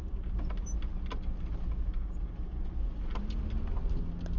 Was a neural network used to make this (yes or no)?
no